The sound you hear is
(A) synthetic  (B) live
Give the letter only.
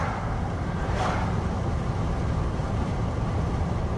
B